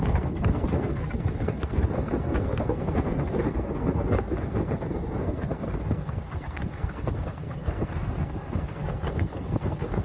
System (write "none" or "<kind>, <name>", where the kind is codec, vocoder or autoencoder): codec, SNAC